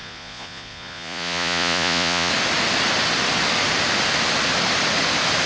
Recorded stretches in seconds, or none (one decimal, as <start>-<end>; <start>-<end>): 2.3-5.5